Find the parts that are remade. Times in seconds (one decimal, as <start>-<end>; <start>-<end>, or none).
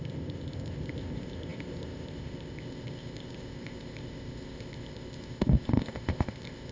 0.0-6.7